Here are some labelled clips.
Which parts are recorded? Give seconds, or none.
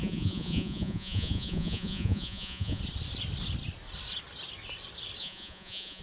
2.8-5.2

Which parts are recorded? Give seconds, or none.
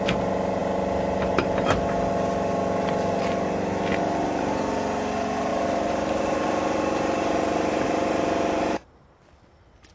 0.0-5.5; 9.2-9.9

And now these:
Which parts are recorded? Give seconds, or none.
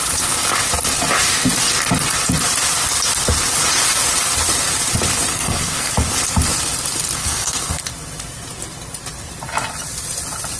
0.0-5.3; 5.9-7.2; 7.8-10.6